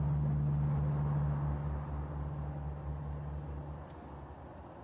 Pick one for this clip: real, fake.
real